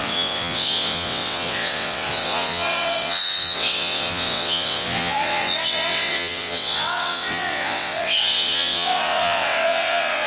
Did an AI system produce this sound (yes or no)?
yes